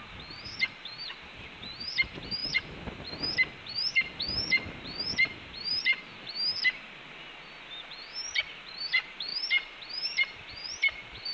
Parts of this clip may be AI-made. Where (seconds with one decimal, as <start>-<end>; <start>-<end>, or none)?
0.0-6.1; 7.8-11.3